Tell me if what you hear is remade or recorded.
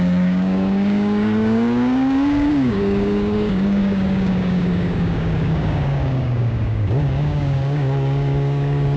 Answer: remade